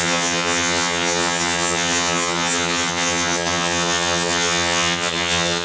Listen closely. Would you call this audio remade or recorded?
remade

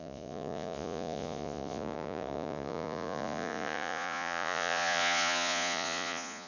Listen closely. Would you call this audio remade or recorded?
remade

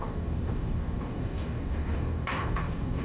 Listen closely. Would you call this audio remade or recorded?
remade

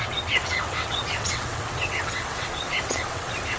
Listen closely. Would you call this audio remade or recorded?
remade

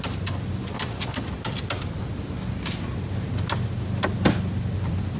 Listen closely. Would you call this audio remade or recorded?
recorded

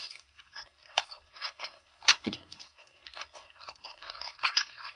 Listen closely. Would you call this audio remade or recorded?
remade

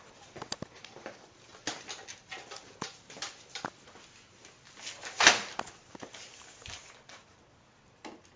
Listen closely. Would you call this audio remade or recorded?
recorded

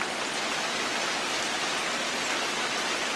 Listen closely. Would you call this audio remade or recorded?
recorded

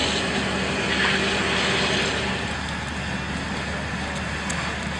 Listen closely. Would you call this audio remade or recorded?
recorded